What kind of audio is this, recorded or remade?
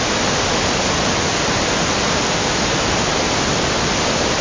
recorded